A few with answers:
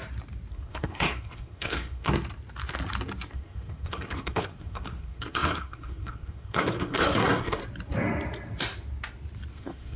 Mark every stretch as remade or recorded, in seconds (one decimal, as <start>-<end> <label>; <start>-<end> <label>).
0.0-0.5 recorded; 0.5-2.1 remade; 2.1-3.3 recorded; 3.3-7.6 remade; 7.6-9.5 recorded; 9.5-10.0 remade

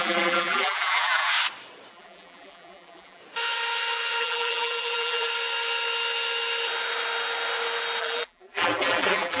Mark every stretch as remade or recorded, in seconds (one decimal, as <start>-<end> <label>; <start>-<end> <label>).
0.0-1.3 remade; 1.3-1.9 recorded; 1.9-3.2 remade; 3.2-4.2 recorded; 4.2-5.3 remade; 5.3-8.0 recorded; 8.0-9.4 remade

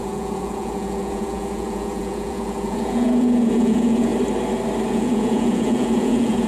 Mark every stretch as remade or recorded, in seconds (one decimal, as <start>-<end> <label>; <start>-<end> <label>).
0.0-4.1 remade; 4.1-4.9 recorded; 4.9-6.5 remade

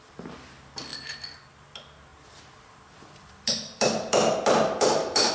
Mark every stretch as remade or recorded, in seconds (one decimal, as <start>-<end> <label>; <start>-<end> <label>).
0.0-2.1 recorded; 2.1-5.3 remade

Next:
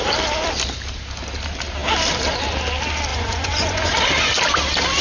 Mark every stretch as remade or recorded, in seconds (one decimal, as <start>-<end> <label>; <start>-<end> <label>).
0.0-3.1 recorded; 3.1-3.9 remade; 3.9-5.0 recorded

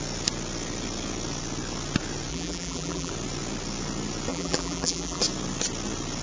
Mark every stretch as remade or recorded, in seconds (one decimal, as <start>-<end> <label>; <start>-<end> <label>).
0.0-2.3 recorded; 2.3-3.1 remade; 3.1-4.3 recorded; 4.3-5.2 remade; 5.2-6.2 recorded